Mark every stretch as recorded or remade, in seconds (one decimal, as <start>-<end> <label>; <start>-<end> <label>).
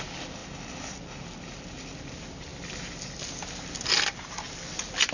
0.0-5.1 recorded